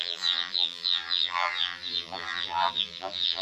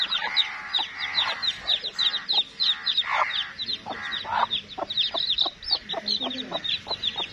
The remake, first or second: first